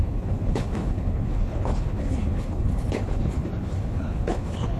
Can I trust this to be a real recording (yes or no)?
no